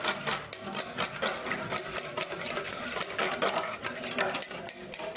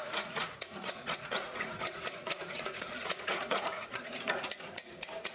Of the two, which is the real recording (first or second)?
first